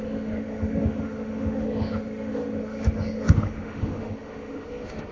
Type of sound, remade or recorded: remade